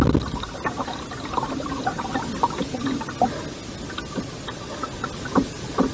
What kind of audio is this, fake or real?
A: real